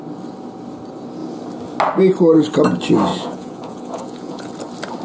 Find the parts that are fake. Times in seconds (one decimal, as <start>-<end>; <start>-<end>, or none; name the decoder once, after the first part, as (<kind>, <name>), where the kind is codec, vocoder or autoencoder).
3.1-4.5 (vocoder, Vocos)